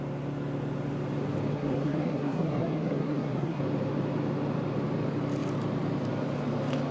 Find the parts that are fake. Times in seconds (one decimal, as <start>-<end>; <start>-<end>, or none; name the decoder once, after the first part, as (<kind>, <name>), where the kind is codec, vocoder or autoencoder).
1.5-3.6 (codec, SNAC)